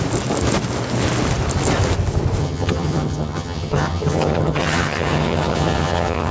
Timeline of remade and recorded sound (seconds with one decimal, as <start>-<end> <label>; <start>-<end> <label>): 0.0-2.4 recorded; 2.4-6.3 remade